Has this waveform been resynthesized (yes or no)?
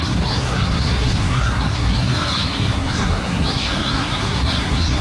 yes